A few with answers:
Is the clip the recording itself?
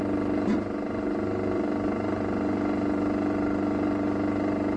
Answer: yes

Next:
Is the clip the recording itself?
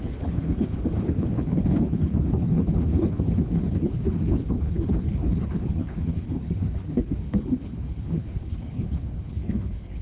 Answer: no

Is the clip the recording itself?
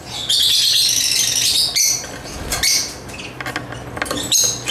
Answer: yes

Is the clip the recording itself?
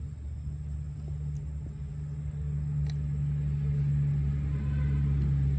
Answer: yes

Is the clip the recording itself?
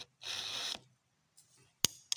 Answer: yes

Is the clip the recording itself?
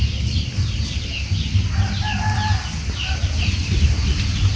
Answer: no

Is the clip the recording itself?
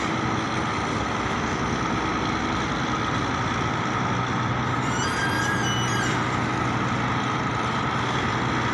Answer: yes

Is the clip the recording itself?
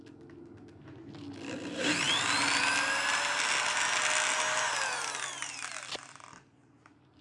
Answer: yes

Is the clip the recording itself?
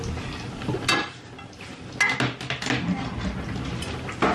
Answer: yes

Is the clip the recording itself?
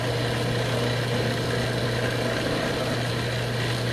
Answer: yes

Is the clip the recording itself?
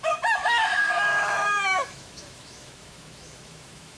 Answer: no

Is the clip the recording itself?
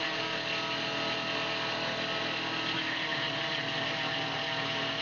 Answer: yes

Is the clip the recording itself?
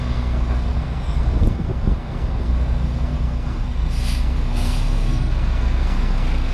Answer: no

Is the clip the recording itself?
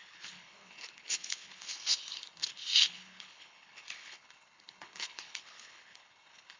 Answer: no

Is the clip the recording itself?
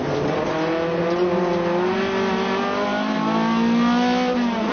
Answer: yes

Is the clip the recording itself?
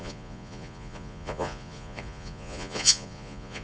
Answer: no